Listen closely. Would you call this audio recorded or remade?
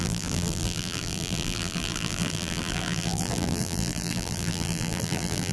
remade